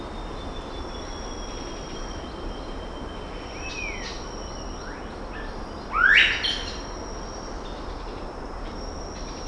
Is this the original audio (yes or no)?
yes